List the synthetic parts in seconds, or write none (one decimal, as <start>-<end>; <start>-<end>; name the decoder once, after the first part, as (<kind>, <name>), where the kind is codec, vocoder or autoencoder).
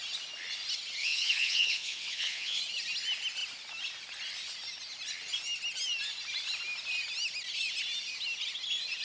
1.0-2.6 (vocoder, WaveNeXt)